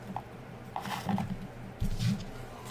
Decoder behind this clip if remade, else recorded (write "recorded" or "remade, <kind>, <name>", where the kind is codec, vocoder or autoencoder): recorded